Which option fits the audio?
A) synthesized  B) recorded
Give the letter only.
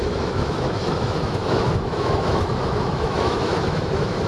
A